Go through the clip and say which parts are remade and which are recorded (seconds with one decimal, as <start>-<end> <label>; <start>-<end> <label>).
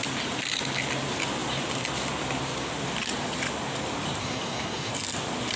0.0-4.2 recorded; 4.2-4.9 remade; 4.9-5.6 recorded